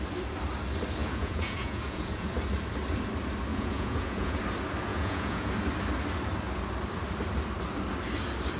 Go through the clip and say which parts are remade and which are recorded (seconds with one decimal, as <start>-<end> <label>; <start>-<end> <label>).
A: 0.0-1.0 recorded; 1.0-2.3 remade; 2.3-3.5 recorded; 3.5-4.4 remade; 4.4-4.9 recorded; 4.9-5.5 remade; 5.5-8.6 recorded